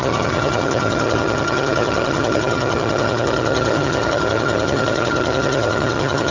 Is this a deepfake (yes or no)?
yes